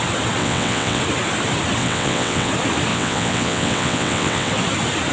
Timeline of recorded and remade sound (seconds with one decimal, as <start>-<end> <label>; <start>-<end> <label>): 0.0-0.4 recorded; 0.4-1.0 remade; 1.0-1.8 recorded; 1.8-2.5 remade; 2.5-2.9 recorded; 2.9-4.5 remade; 4.5-5.1 recorded